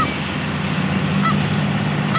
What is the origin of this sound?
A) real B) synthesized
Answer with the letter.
A